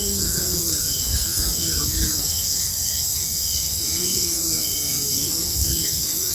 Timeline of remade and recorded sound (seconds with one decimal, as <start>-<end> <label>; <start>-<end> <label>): 0.0-6.3 remade